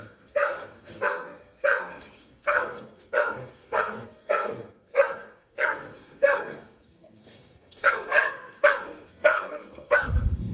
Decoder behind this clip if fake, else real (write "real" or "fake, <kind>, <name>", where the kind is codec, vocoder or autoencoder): fake, codec, SNAC